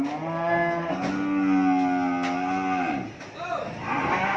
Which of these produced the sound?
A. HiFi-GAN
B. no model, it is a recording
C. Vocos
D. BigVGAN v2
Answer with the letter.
B